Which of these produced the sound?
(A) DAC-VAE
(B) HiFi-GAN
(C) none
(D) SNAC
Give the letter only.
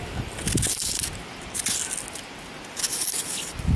C